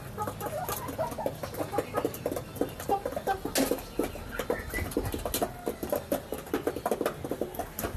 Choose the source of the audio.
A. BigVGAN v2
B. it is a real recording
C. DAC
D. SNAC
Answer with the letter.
B